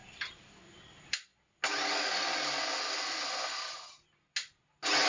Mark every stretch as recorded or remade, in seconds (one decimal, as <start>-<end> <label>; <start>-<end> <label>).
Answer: 0.0-5.1 recorded